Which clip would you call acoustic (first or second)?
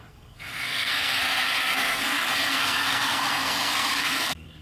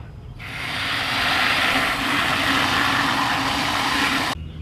second